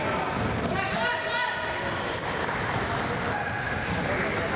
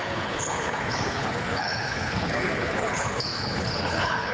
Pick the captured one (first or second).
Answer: first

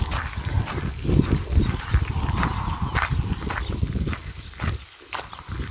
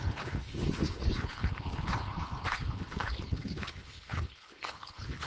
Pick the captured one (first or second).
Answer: first